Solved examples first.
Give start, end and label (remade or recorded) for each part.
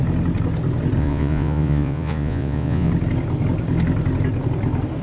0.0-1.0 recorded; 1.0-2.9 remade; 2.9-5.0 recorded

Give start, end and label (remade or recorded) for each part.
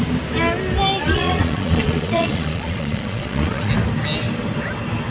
0.0-1.0 recorded; 1.0-3.7 remade; 3.7-5.1 recorded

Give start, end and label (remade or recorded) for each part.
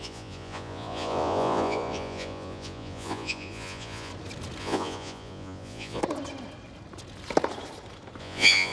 0.0-4.1 remade; 4.1-4.6 recorded; 4.6-6.0 remade; 6.0-8.2 recorded; 8.2-8.7 remade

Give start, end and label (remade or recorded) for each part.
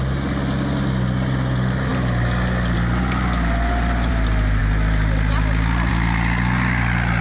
0.0-7.2 recorded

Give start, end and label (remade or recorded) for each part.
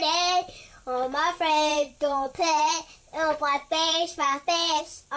0.0-1.7 recorded; 1.7-4.8 remade; 4.8-5.2 recorded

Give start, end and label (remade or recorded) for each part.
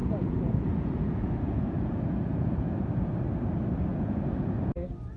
0.0-3.1 remade; 3.1-3.9 recorded; 3.9-4.7 remade; 4.7-5.2 recorded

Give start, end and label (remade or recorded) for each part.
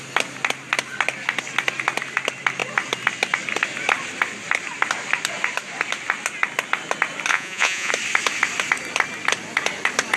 0.0-7.3 recorded; 7.3-7.9 remade; 7.9-10.2 recorded